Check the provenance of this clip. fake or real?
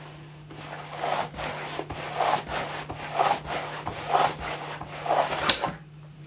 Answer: real